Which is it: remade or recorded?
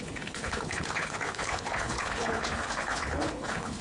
remade